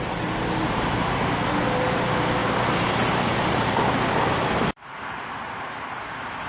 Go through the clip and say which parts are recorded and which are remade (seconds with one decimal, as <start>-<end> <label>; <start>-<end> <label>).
0.0-6.5 remade